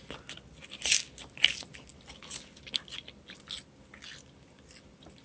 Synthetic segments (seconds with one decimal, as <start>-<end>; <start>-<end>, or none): none